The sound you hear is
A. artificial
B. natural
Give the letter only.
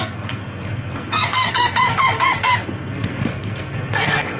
A